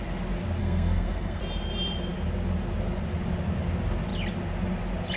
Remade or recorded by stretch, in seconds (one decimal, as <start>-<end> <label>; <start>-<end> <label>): 0.0-0.6 recorded; 0.6-1.4 remade; 1.4-5.2 recorded